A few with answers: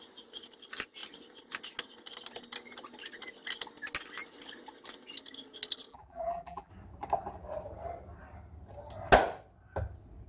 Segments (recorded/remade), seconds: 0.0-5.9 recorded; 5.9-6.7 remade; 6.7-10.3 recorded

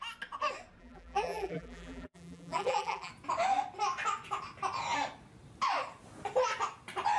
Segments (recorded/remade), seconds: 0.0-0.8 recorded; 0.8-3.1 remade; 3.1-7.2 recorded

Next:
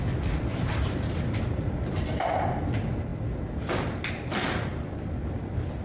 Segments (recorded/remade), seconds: 0.0-0.5 recorded; 0.5-1.4 remade; 1.4-5.8 recorded